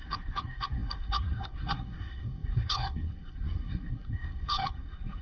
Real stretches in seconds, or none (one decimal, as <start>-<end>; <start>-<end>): none